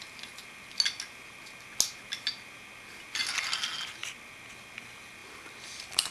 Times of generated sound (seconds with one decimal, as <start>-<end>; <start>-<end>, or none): 5.2-6.1